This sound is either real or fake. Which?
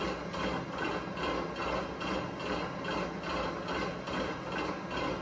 real